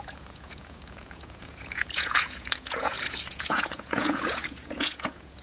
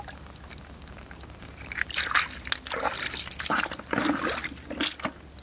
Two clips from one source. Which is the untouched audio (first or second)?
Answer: second